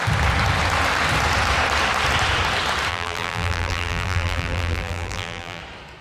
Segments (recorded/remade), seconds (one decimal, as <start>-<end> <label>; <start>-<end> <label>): 0.0-2.9 recorded; 2.9-5.6 remade; 5.6-6.0 recorded